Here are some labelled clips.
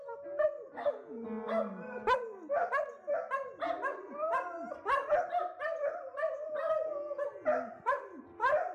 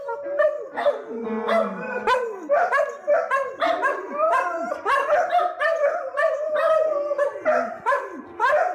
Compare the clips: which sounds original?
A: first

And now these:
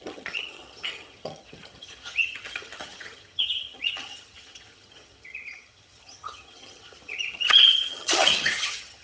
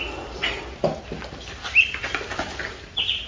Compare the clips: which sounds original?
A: second